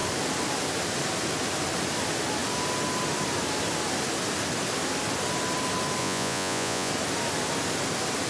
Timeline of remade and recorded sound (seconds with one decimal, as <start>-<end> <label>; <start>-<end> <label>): 0.0-6.0 recorded; 6.0-6.9 remade; 6.9-8.3 recorded